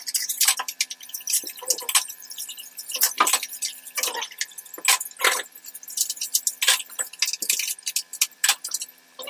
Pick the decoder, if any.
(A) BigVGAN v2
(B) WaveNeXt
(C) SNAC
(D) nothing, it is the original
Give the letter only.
D